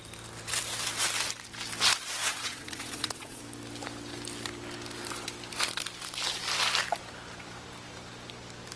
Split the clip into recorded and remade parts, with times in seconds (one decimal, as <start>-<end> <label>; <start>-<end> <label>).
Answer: 0.0-2.2 recorded; 2.2-3.4 remade; 3.4-8.8 recorded